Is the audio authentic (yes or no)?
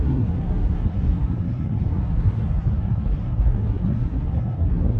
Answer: no